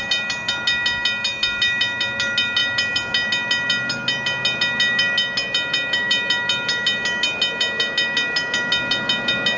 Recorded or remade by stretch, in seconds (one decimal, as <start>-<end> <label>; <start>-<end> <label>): 0.0-9.6 recorded